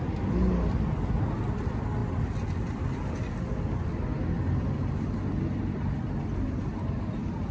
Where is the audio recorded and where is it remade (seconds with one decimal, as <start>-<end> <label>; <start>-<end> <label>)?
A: 0.0-7.5 recorded